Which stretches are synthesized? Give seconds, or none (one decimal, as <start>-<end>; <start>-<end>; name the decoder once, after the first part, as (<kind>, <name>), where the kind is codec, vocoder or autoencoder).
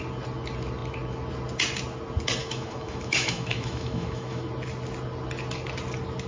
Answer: 2.4-4.5 (autoencoder, DAC-VAE)